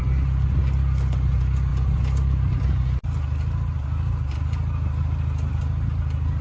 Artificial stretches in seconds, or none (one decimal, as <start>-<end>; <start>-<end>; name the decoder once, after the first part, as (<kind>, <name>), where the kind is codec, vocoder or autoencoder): none